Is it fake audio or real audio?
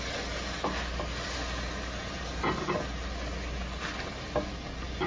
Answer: real